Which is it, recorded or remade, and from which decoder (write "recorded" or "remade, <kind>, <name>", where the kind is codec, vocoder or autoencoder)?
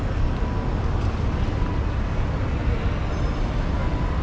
recorded